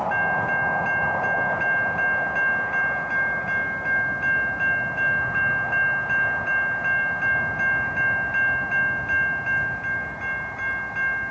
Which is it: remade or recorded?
recorded